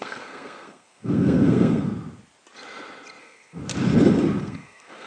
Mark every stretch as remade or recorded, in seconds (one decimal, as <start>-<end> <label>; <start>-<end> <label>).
0.0-1.9 remade; 1.9-3.2 recorded; 3.2-3.6 remade; 3.6-4.4 recorded; 4.4-5.1 remade